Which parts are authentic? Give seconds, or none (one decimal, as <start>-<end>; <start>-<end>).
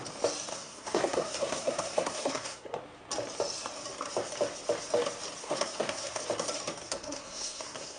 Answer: 0.0-0.5; 2.8-5.4; 6.2-6.8